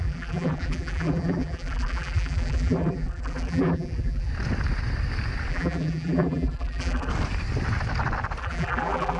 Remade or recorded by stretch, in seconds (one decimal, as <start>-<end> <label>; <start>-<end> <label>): 0.0-4.3 remade; 4.3-5.5 recorded; 5.5-7.1 remade; 7.1-8.4 recorded; 8.4-9.2 remade